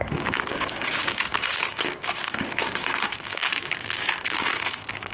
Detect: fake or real fake